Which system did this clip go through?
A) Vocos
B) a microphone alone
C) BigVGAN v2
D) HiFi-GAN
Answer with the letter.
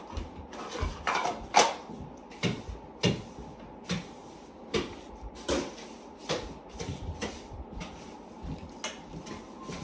B